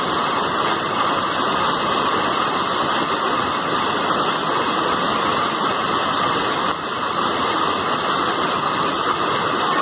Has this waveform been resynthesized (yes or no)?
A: no